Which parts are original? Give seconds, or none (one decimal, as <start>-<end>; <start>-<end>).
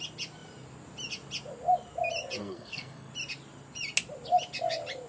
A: 0.0-2.4; 3.1-5.1